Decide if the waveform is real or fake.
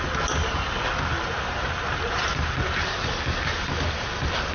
real